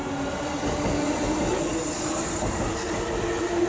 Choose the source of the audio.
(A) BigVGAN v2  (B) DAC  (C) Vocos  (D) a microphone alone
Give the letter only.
D